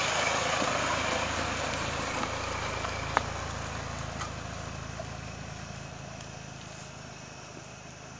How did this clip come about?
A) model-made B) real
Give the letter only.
B